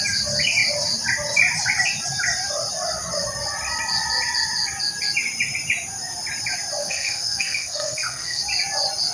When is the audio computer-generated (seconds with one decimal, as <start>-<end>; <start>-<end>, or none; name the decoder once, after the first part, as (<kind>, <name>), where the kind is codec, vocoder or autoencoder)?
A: 6.8-8.4 (codec, SNAC)